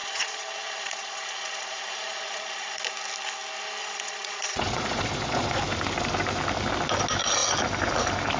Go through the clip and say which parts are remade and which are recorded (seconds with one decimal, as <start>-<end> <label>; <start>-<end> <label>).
0.0-2.8 remade; 2.8-3.8 recorded; 3.8-5.6 remade; 5.6-8.4 recorded